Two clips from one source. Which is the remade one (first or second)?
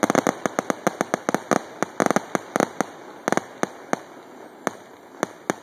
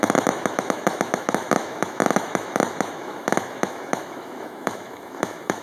second